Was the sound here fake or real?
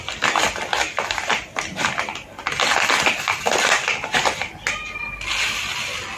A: real